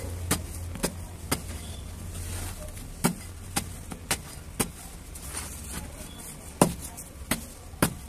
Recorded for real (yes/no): yes